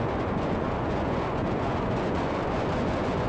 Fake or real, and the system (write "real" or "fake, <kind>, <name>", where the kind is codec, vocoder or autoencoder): fake, vocoder, Vocos